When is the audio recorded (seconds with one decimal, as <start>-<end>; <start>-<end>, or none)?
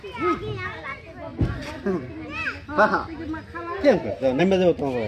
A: 0.0-5.1